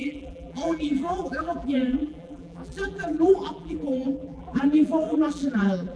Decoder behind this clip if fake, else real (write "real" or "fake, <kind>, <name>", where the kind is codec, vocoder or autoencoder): fake, vocoder, BigVGAN v2